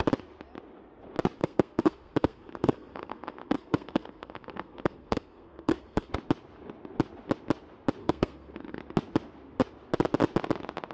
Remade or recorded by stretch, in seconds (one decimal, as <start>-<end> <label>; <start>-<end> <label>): 0.0-1.4 recorded; 1.4-6.1 remade; 6.1-8.0 recorded; 8.0-8.8 remade; 8.8-10.9 recorded